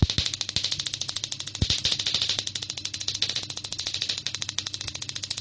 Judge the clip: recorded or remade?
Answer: recorded